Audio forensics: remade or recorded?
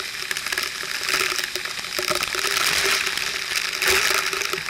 recorded